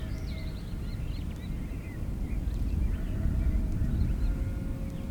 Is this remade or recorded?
recorded